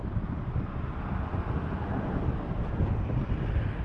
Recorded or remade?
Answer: recorded